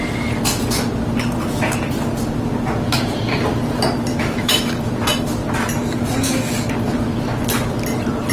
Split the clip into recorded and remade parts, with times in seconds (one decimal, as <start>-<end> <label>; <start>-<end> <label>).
0.0-4.1 recorded; 4.1-4.7 remade; 4.7-8.3 recorded